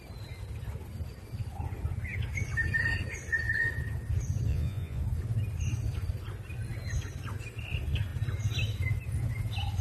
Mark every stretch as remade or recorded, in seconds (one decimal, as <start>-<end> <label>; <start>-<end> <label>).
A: 0.0-4.5 recorded; 4.5-5.0 remade; 5.0-9.8 recorded